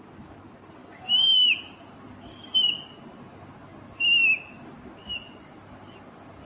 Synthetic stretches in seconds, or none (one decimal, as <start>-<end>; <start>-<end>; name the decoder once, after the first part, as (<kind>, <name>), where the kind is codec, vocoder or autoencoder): none